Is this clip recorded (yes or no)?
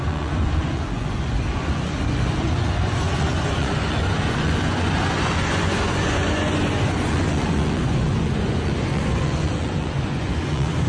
no